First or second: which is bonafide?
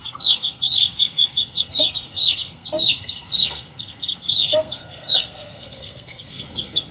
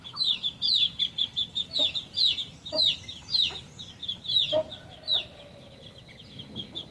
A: second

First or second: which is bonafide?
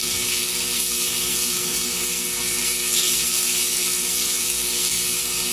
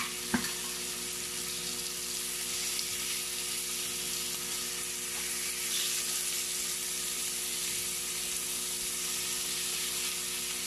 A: second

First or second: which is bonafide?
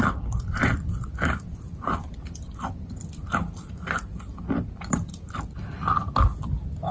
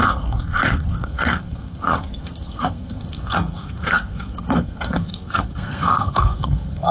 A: first